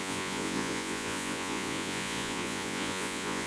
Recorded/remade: remade